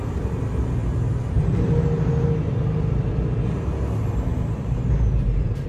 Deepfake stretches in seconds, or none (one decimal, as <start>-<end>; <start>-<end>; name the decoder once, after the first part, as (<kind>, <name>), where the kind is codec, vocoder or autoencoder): 0.8-1.4 (vocoder, BigVGAN v2); 4.3-5.7